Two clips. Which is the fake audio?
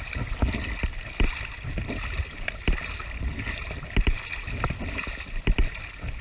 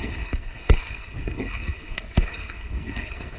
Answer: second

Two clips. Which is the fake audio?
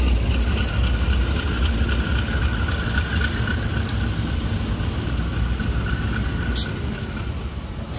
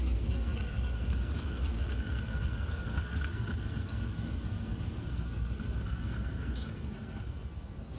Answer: second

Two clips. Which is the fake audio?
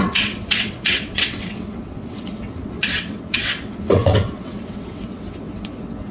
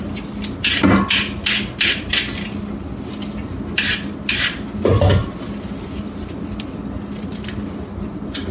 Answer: first